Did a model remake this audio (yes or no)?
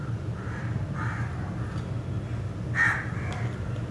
no